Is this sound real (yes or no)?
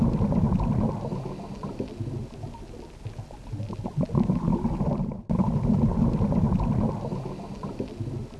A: yes